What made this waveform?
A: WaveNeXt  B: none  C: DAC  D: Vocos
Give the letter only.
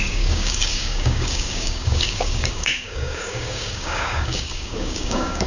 C